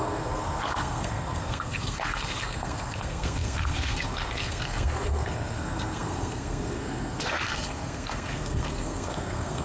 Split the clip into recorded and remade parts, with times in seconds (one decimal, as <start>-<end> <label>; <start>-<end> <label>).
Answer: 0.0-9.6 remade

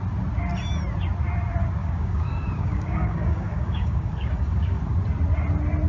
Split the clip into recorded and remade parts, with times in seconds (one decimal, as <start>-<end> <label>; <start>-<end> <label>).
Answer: 0.0-1.8 recorded; 1.8-4.8 remade; 4.8-5.9 recorded

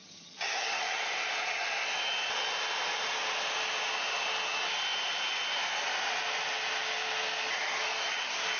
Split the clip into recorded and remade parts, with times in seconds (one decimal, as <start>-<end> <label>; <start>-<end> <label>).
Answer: 0.0-1.0 remade; 1.0-8.6 recorded